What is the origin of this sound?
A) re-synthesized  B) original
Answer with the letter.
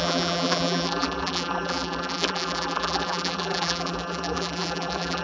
A